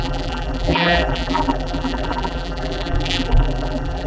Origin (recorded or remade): remade